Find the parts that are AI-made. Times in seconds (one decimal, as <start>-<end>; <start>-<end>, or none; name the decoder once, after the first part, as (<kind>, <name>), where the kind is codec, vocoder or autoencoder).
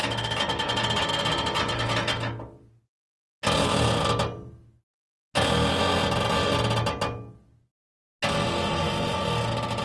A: none